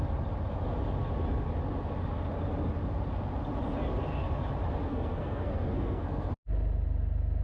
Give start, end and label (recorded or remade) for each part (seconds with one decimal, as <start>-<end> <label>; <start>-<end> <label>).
0.0-4.9 recorded; 4.9-6.3 remade; 6.3-7.4 recorded